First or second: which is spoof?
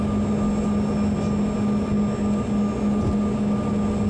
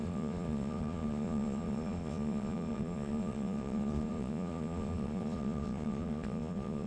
second